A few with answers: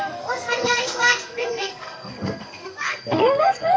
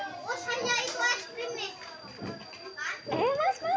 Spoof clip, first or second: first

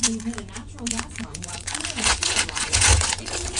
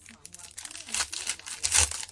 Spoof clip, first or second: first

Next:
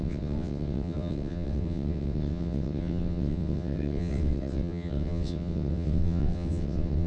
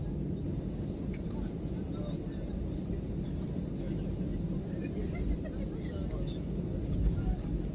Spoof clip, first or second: first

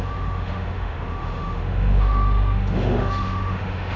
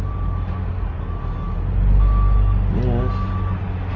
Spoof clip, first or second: first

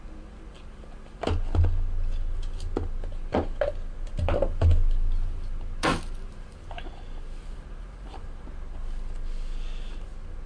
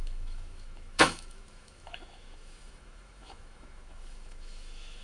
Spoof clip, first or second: second